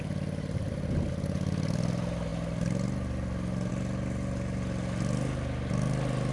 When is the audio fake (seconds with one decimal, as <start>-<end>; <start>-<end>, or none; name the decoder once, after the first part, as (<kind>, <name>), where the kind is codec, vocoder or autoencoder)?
none